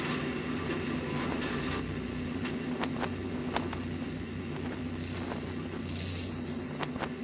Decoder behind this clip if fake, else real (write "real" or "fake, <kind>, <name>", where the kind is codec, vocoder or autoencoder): real